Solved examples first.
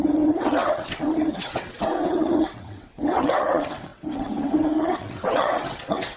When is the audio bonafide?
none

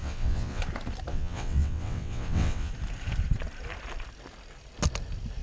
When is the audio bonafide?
0.6-1.1; 2.7-5.4

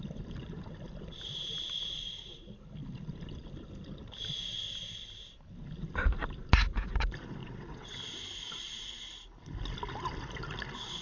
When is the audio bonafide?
0.0-7.4; 8.0-11.0